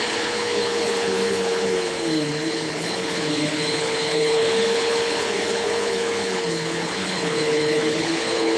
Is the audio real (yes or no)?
no